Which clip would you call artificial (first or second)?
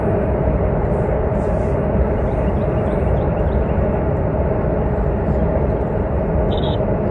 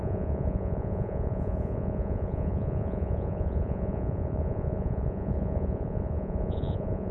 second